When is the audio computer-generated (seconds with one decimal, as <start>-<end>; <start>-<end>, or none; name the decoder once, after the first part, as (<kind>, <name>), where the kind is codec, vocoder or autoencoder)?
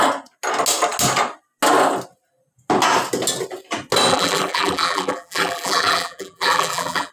4.1-7.1 (vocoder, BigVGAN v2)